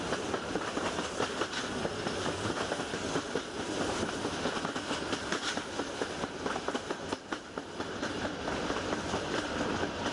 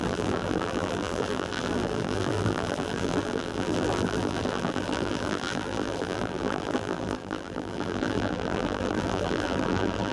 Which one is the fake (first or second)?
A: second